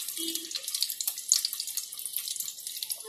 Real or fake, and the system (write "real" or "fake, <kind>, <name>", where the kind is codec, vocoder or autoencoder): real